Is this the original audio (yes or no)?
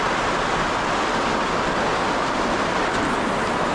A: yes